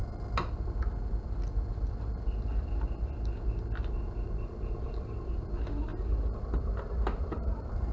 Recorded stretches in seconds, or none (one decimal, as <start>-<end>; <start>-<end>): 0.0-4.7; 5.9-6.4